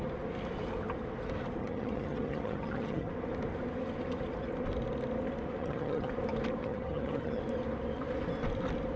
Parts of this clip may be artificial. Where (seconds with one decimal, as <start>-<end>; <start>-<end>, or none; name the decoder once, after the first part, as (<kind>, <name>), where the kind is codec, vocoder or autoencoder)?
1.6-3.1 (vocoder, HiFi-GAN); 5.6-6.1; 6.6-7.4